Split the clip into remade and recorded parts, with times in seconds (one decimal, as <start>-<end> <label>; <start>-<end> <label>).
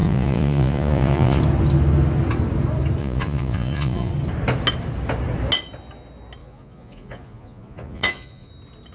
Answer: 0.0-1.4 remade; 1.4-3.0 recorded; 3.0-4.1 remade; 4.1-6.4 recorded; 6.4-8.5 remade; 8.5-8.9 recorded